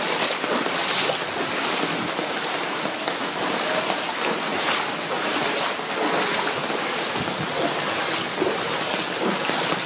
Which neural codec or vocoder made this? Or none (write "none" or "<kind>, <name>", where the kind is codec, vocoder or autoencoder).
none